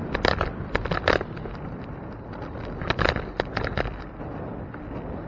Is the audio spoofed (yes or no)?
no